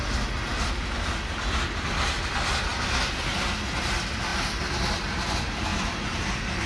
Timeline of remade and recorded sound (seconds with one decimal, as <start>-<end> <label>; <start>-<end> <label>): 0.0-6.7 recorded